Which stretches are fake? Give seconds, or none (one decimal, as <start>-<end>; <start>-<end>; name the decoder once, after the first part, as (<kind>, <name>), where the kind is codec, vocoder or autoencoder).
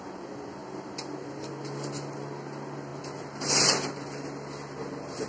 none